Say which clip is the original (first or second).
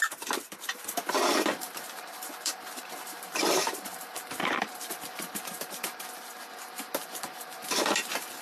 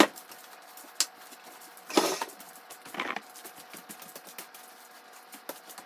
second